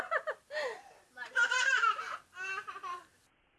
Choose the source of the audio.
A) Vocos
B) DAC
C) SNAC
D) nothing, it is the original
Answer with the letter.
D